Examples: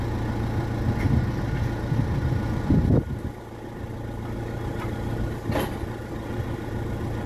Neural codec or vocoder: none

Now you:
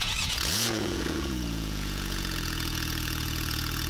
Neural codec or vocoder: vocoder, Vocos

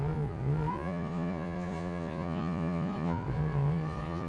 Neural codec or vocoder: vocoder, Vocos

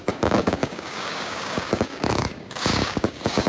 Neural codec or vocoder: codec, DAC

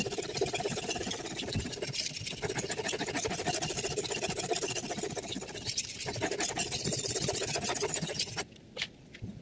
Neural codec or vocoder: none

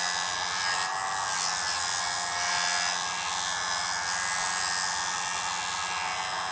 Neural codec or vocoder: none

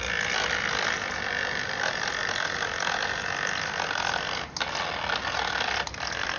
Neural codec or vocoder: none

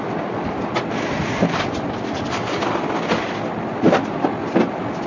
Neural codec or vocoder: none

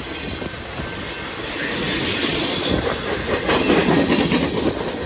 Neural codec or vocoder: none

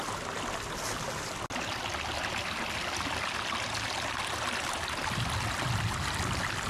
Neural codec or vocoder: none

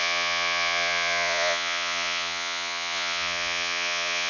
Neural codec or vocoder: vocoder, Vocos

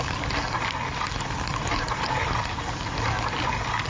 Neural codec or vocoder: none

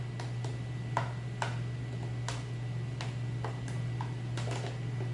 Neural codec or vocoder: none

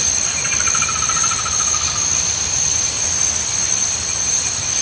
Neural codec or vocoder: none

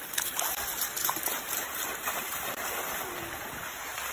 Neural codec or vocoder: none